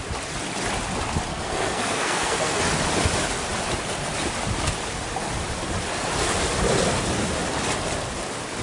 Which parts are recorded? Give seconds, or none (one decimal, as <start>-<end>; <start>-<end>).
0.0-1.3; 2.6-8.6